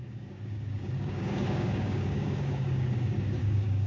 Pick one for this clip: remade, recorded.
remade